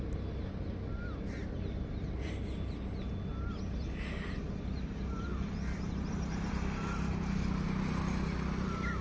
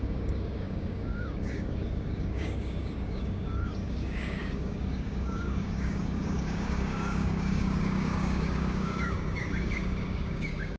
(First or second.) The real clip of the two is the first